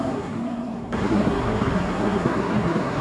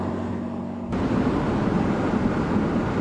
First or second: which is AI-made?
first